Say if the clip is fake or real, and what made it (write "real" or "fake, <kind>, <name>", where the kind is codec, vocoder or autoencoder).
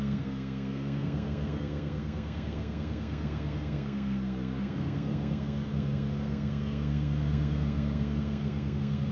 fake, codec, SNAC